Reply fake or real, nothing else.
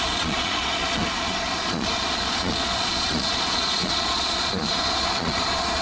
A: fake